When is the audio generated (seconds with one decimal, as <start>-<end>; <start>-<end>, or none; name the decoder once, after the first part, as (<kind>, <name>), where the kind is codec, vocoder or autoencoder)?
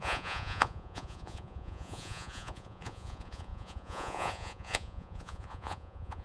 0.0-6.2 (vocoder, Vocos)